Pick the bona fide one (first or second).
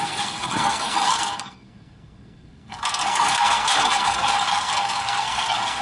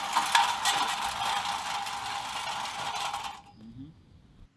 second